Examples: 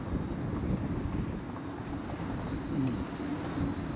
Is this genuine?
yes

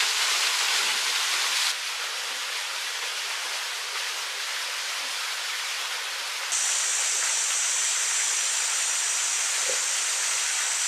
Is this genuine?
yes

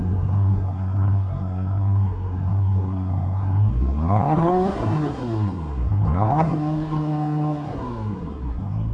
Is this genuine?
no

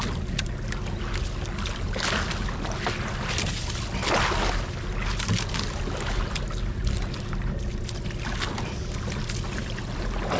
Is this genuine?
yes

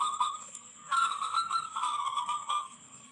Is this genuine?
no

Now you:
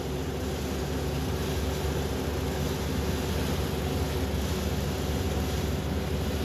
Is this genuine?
yes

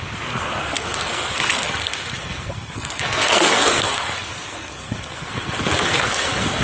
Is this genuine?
no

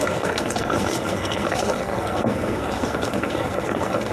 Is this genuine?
no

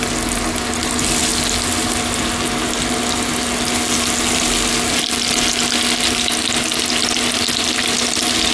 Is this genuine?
yes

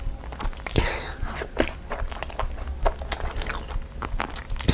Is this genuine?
yes